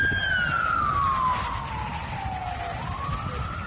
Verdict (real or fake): real